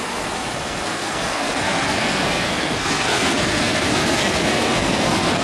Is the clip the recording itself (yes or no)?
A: no